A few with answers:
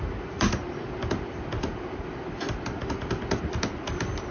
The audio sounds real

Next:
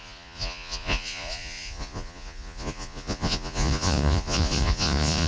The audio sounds fake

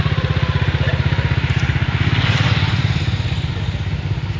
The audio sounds real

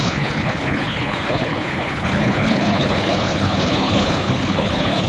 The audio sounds fake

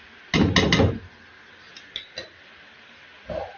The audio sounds real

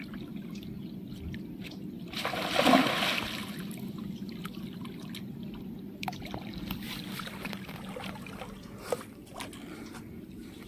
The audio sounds real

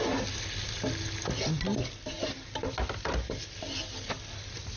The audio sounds real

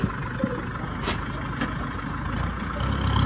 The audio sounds real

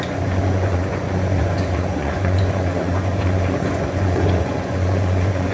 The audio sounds fake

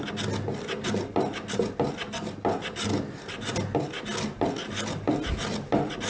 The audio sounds real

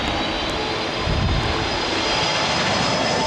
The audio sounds real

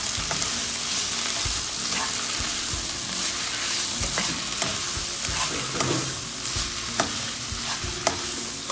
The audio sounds real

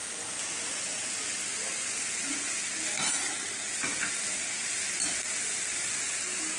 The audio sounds real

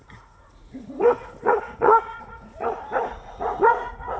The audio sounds fake